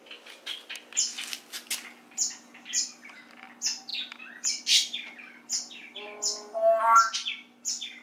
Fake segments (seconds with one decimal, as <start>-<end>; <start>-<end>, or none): none